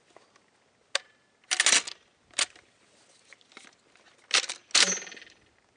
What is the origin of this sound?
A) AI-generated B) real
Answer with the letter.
B